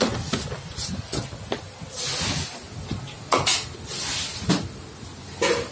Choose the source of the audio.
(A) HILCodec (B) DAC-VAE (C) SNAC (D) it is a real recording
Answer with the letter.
D